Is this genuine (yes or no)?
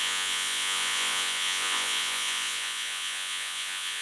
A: no